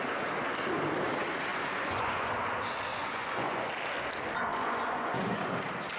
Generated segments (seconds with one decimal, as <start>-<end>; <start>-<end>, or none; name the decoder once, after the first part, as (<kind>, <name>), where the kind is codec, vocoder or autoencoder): 1.5-2.3 (vocoder, Vocos); 2.9-3.7; 4.5-5.5